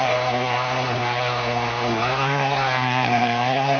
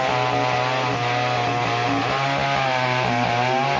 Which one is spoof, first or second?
first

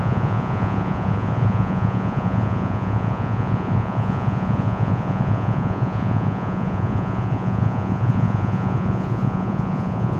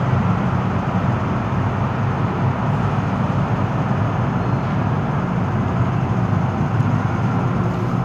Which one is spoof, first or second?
first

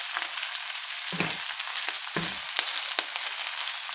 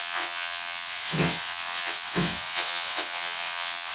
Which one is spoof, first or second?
second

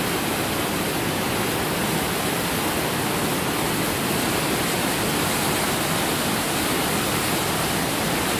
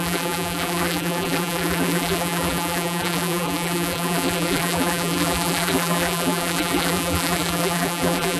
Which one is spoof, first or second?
second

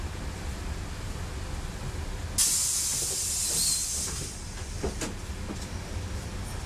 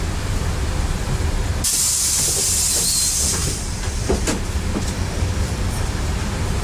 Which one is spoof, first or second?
second